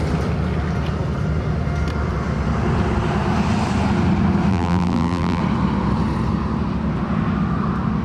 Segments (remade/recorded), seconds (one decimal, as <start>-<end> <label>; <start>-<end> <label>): 0.0-4.5 recorded; 4.5-5.4 remade; 5.4-8.0 recorded